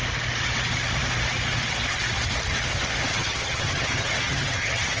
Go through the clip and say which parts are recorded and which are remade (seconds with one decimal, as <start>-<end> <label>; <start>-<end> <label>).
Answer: 0.0-3.1 recorded; 3.1-5.0 remade